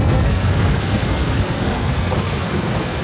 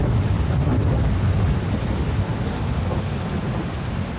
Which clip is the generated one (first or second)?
first